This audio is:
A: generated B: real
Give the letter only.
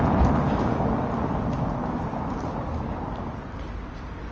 B